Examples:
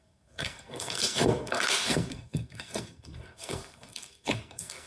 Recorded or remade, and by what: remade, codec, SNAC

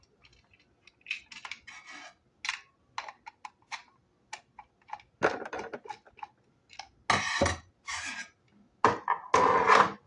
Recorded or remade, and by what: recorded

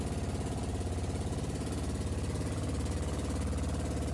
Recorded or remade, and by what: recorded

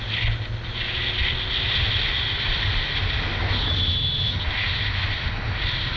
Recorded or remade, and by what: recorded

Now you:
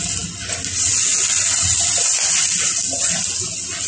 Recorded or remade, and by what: recorded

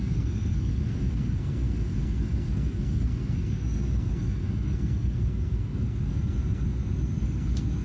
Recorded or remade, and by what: remade, codec, SNAC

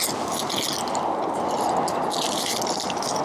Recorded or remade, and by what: recorded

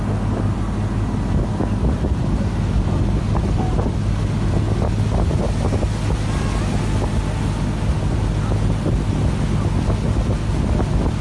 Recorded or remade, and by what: recorded